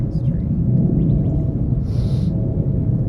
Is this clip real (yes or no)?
yes